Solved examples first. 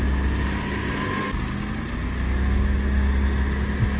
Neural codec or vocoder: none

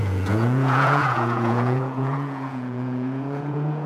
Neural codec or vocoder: vocoder, Vocos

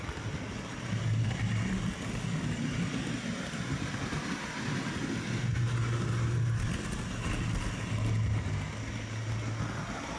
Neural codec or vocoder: none